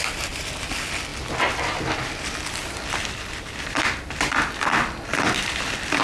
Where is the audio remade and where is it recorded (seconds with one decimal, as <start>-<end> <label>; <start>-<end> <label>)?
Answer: 0.0-1.1 recorded; 1.1-3.7 remade; 3.7-5.1 recorded; 5.1-6.0 remade